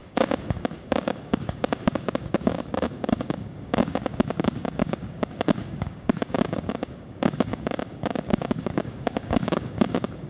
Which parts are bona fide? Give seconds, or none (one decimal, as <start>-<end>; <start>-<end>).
none